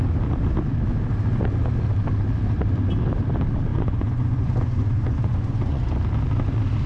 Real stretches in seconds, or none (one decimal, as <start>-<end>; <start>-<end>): 0.0-3.7; 5.9-6.9